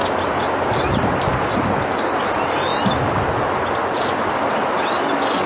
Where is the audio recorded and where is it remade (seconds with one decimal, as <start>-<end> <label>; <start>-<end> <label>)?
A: 0.0-1.1 remade; 1.1-5.5 recorded